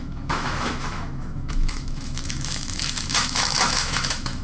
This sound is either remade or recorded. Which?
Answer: remade